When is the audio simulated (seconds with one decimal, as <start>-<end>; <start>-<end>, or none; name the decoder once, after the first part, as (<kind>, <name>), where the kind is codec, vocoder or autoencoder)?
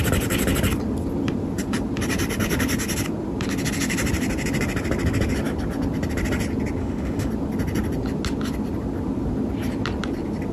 6.8-7.3 (autoencoder, DAC-VAE)